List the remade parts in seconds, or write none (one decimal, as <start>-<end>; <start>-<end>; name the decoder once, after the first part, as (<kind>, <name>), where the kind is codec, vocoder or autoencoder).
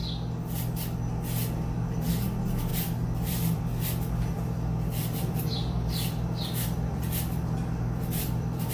2.7-3.6 (vocoder, BigVGAN v2); 4.3-8.7